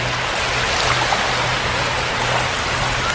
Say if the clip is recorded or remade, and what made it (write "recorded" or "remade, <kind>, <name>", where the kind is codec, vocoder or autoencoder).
recorded